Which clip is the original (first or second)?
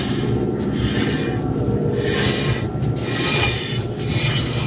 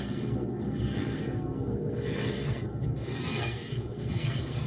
first